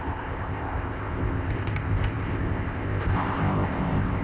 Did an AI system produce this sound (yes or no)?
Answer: yes